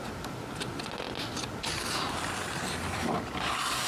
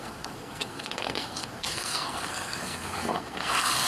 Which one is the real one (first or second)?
first